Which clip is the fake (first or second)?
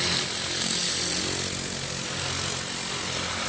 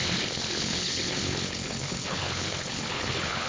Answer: second